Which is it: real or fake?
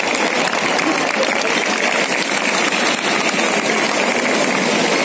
real